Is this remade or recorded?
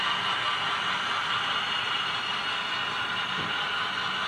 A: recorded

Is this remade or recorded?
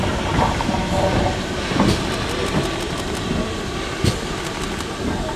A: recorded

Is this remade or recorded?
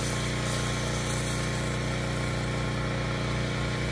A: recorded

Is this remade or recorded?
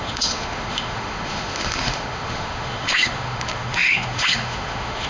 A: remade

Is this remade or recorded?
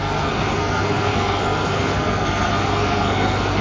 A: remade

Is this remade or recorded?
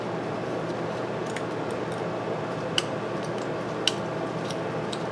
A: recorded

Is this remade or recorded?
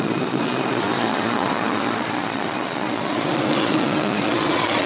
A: remade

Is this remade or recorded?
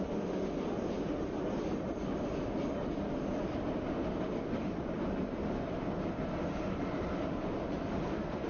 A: recorded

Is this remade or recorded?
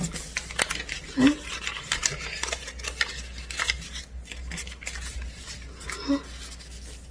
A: recorded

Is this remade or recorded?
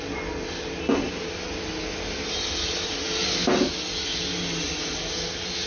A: recorded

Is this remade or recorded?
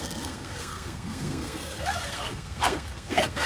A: remade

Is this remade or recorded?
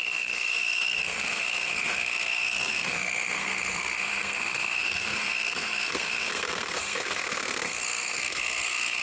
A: remade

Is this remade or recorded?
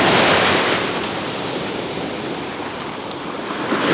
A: recorded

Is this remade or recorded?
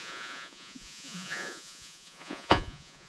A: remade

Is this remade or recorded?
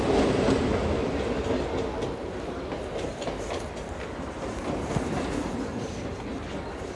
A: recorded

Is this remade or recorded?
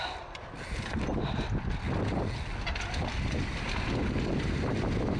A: recorded